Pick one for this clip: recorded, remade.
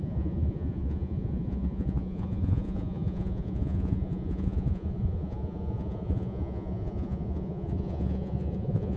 remade